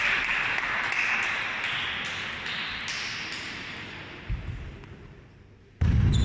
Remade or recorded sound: recorded